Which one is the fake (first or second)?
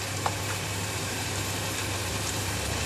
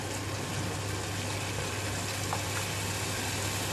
first